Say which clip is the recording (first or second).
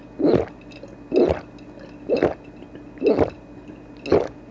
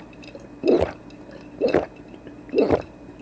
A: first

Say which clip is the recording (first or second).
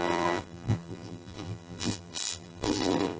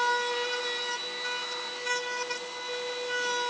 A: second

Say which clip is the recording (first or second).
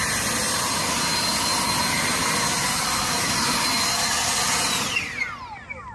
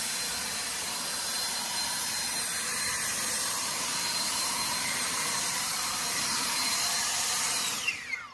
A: first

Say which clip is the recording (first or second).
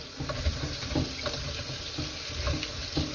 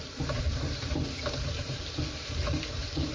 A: first